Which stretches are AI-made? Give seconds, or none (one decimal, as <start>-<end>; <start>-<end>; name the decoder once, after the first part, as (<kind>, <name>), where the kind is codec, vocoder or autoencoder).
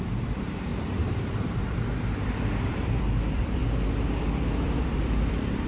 0.0-3.6 (vocoder, BigVGAN v2); 4.6-5.7